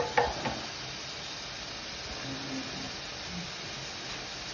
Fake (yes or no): no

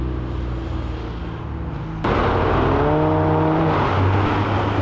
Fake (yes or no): no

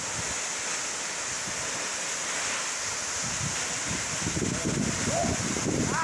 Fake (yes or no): no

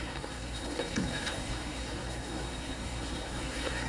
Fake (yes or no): yes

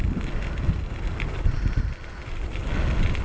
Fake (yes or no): no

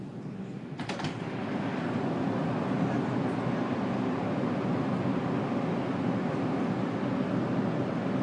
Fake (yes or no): no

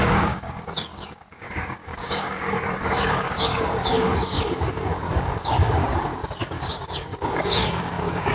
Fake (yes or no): yes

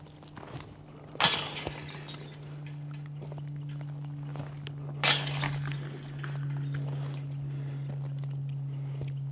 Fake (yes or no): no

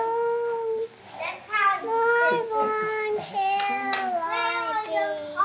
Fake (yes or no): no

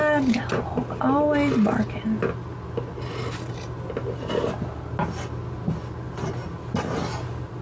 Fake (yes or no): no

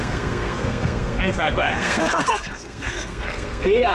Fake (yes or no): yes